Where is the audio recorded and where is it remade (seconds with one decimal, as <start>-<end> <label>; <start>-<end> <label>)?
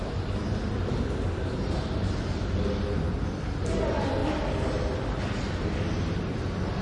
0.0-6.8 recorded